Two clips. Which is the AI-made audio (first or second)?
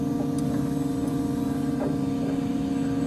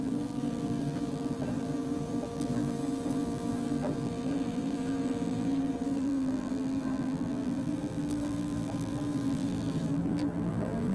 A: second